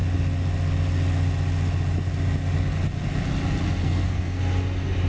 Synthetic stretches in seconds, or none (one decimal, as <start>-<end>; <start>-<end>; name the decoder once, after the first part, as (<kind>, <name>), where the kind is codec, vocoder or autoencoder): 3.8-4.4 (codec, SNAC)